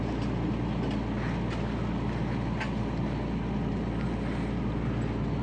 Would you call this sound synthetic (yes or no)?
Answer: no